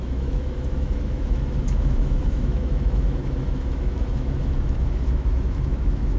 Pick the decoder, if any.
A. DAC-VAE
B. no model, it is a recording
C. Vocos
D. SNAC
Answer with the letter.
A